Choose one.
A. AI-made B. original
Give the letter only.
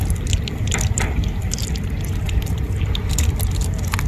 B